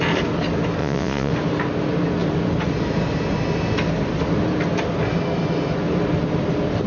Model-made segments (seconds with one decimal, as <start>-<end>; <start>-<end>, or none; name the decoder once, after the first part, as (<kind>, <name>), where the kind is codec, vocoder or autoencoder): 0.8-1.3 (vocoder, Vocos)